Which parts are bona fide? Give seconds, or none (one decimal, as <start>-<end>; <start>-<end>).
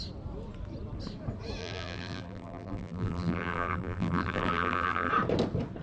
0.0-1.6; 5.1-5.8